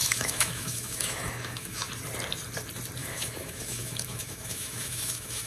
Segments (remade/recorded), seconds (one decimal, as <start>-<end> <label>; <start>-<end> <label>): 0.0-1.9 remade; 1.9-3.0 recorded; 3.0-5.5 remade